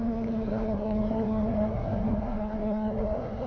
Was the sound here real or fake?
fake